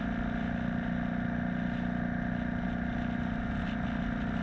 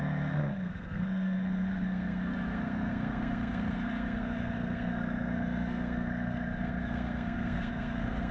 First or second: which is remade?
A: second